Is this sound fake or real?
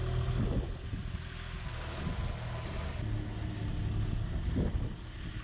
real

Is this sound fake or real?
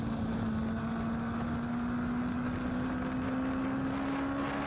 real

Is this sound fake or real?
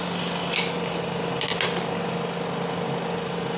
real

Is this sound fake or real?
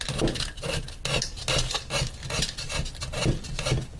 real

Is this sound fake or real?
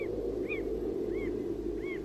real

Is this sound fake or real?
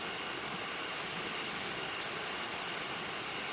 real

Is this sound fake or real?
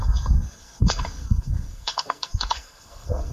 fake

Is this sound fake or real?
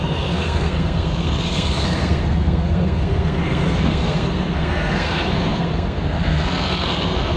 fake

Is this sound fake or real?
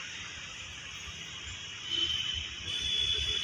real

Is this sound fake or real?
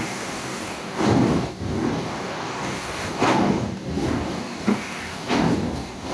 fake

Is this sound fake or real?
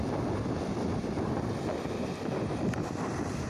real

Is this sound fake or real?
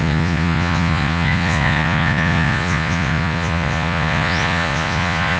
fake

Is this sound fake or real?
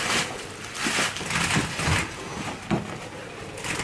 real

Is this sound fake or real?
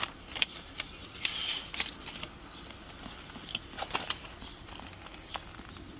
real